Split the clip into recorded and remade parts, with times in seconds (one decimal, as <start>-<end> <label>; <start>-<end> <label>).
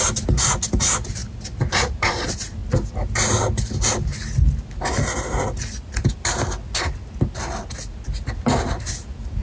0.0-9.4 recorded